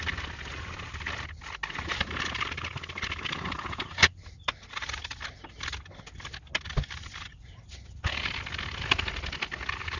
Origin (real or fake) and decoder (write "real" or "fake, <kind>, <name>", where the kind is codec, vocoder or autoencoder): real